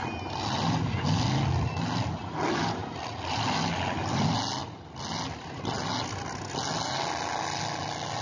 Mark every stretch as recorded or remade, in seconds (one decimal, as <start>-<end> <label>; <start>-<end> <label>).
0.0-8.2 recorded